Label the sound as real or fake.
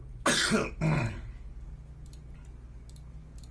real